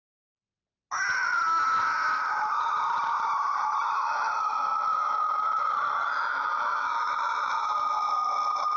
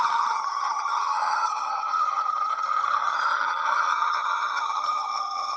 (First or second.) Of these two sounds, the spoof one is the second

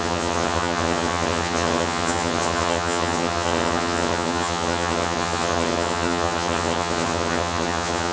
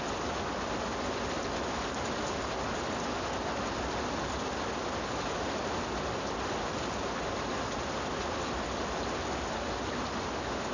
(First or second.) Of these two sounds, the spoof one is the first